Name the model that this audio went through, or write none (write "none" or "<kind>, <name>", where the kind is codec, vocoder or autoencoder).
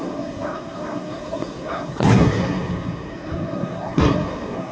codec, SNAC